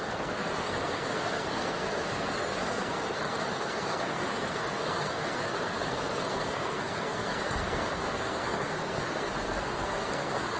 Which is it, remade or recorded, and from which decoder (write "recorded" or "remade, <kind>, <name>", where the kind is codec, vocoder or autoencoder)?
remade, codec, SNAC